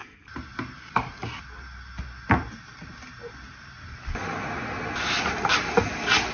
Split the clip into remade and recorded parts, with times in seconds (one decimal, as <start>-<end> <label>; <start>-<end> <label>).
0.0-6.3 recorded